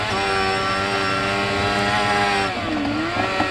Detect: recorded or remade recorded